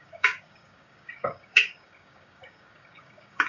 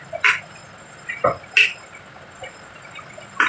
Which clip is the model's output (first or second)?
first